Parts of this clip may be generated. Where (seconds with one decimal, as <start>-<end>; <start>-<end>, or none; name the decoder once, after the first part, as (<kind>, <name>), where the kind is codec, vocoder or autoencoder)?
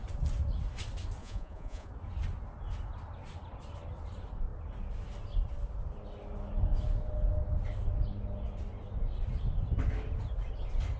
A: 1.2-1.9 (vocoder, Vocos)